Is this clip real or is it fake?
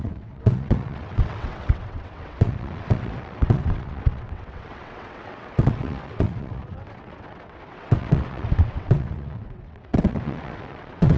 fake